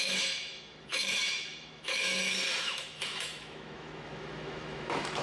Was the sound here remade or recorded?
remade